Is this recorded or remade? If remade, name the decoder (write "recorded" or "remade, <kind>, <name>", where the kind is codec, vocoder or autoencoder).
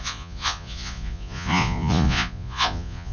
remade, vocoder, Vocos